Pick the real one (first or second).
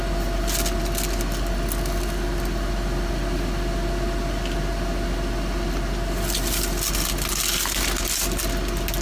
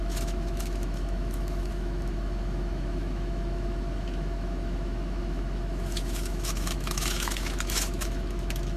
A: first